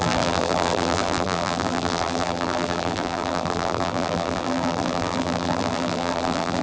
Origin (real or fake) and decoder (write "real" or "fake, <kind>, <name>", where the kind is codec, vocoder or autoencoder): fake, vocoder, BigVGAN v2